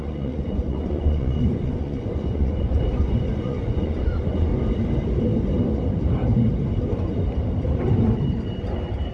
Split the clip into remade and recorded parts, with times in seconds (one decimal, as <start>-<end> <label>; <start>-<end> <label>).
0.0-4.5 remade; 4.5-9.1 recorded